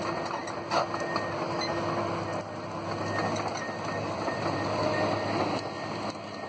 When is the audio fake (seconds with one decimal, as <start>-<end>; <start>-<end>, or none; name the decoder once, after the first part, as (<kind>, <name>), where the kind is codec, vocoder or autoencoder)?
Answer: none